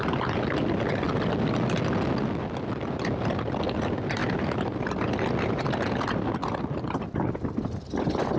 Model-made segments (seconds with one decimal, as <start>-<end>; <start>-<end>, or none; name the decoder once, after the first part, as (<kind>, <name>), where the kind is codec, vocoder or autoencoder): none